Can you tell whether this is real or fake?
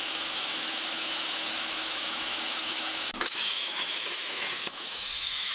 fake